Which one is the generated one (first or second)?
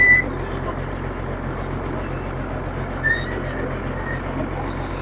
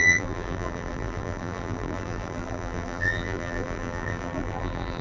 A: second